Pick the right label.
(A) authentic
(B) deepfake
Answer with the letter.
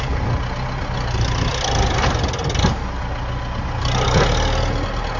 A